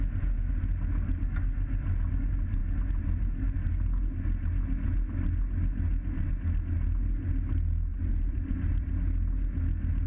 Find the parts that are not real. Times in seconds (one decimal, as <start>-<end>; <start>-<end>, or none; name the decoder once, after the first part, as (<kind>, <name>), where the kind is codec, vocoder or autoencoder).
7.9-8.9 (vocoder, BigVGAN v2)